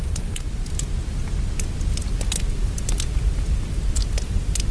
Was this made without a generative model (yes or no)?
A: yes